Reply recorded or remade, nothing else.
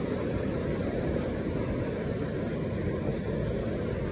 recorded